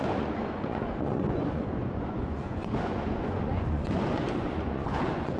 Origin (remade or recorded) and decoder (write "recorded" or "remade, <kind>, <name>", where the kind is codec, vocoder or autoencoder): remade, vocoder, Vocos